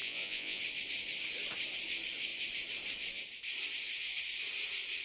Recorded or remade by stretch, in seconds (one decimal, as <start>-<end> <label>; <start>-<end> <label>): 0.0-0.6 remade; 0.6-5.0 recorded